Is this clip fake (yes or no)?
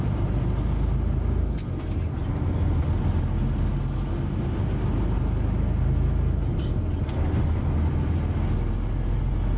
no